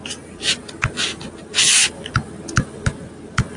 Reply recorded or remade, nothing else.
recorded